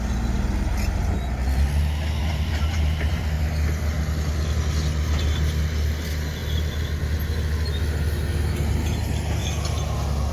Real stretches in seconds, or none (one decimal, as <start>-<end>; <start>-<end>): 0.0-2.2; 3.2-10.3